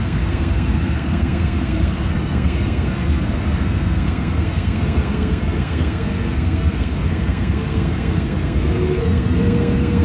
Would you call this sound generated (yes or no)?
yes